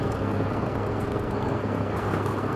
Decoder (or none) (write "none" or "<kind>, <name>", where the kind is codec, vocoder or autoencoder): codec, SNAC